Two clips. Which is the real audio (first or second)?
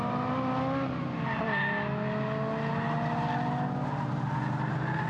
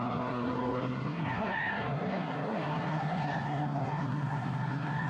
first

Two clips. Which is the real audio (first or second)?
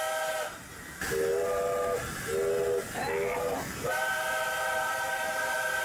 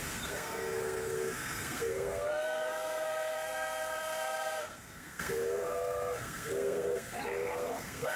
first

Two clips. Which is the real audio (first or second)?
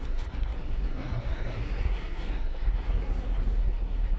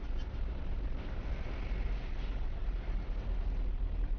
second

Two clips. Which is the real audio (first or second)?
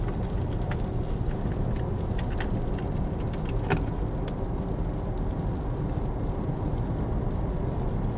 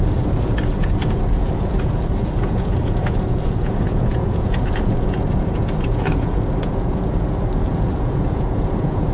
first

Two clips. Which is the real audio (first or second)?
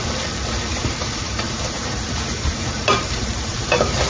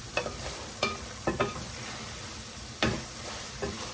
second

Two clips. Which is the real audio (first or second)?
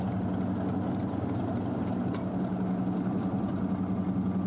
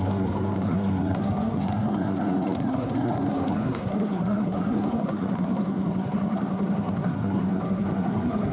first